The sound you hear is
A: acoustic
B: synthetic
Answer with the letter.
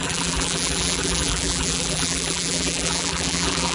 B